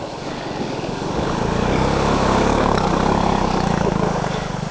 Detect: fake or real fake